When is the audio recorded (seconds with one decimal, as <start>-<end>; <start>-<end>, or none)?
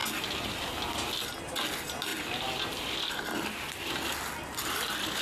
0.0-5.2